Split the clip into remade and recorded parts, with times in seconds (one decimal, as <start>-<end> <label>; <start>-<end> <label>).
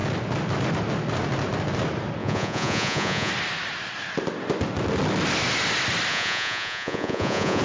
0.0-2.2 recorded; 2.2-3.3 remade; 3.3-6.1 recorded; 6.1-7.6 remade